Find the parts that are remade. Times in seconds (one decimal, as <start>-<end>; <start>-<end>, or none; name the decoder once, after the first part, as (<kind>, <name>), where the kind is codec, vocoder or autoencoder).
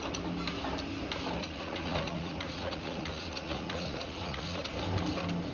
1.4-4.7 (vocoder, Vocos)